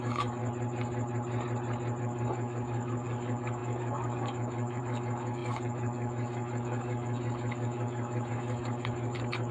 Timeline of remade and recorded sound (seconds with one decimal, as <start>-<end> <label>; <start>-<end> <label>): 0.0-0.4 remade; 0.4-2.0 recorded; 2.0-9.5 remade